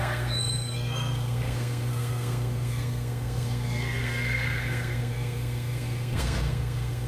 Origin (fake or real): fake